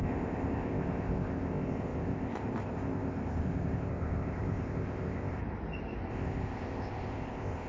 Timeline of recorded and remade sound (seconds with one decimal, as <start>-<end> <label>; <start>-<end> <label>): 0.0-5.4 remade; 5.4-6.1 recorded; 6.1-7.7 remade